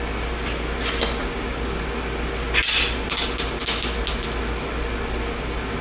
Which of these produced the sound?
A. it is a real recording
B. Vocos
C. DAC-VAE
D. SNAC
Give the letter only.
A